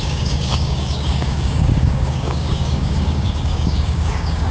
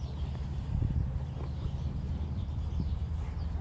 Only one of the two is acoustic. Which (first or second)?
second